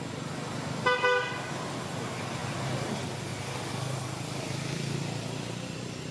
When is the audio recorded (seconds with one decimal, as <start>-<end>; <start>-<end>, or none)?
0.0-6.1